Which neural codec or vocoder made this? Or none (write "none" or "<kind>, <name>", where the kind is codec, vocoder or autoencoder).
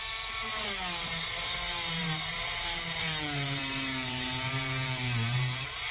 vocoder, BigVGAN v2